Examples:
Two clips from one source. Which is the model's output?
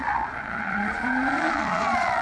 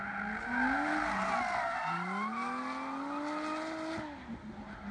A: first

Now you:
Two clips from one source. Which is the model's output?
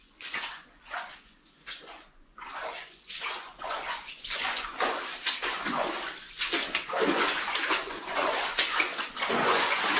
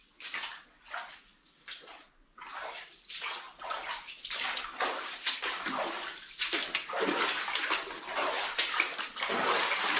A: first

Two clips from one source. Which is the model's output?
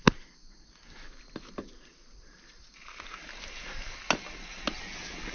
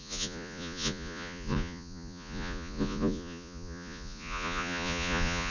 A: second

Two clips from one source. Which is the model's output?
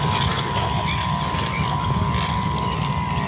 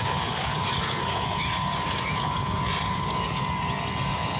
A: second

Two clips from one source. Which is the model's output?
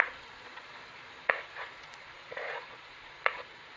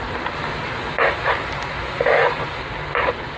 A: first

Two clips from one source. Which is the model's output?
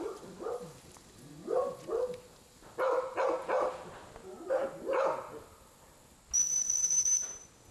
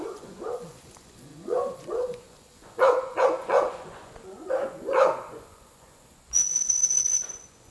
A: second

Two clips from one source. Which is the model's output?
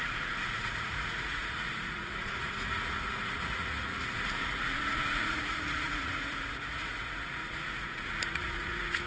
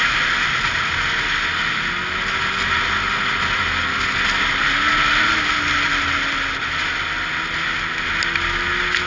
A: first